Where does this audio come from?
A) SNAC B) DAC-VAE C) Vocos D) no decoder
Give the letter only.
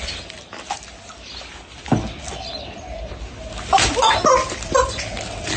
D